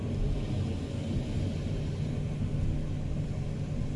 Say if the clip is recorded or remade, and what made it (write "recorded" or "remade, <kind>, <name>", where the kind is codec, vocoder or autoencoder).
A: recorded